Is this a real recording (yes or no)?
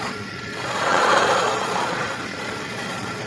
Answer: no